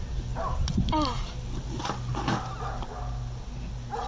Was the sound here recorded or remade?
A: recorded